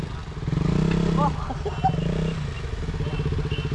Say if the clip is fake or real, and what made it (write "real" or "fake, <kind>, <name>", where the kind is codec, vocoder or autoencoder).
real